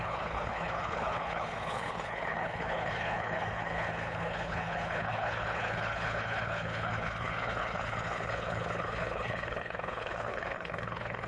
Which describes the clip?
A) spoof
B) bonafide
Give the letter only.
A